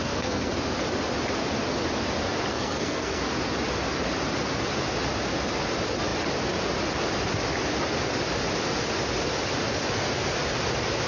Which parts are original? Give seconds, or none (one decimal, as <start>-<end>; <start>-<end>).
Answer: 0.5-2.5; 3.2-11.1